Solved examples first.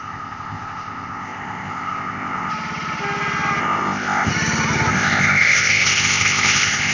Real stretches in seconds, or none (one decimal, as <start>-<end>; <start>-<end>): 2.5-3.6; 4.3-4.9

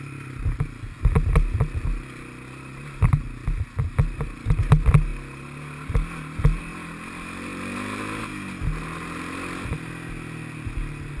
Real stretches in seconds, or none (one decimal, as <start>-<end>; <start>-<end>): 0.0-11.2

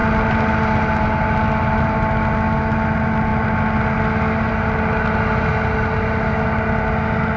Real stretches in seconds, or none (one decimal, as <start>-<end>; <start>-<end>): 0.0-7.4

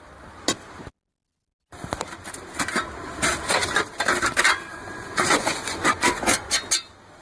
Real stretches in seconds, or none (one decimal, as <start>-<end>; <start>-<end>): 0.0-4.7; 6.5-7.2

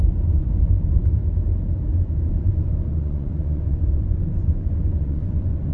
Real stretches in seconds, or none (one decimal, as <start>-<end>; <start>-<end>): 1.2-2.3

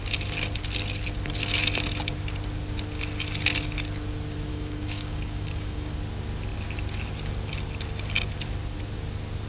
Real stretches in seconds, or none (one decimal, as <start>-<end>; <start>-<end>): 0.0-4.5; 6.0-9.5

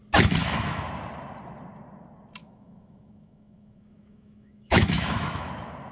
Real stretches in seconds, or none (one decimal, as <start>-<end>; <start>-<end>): 0.0-0.4; 0.9-2.4; 5.5-5.9